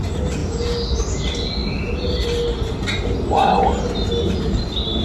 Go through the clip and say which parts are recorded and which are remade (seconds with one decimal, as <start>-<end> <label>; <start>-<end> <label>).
0.0-5.0 recorded